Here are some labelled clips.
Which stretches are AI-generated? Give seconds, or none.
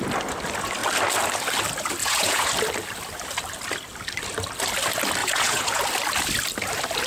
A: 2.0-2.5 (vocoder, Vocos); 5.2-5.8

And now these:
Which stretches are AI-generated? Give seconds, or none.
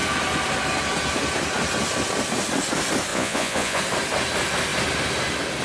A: 3.1-3.8 (vocoder, Vocos)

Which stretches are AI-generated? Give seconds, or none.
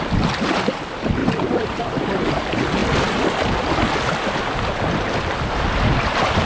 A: 1.2-1.8 (vocoder, BigVGAN v2)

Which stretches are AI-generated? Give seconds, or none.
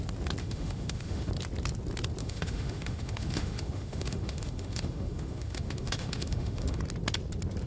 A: 0.4-1.3 (autoencoder, DAC-VAE); 2.2-6.8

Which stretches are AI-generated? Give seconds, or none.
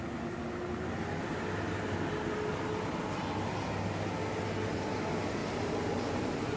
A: 5.4-6.6 (vocoder, BigVGAN v2)